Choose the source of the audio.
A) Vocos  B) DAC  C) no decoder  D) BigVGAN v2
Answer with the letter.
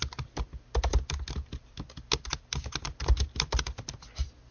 C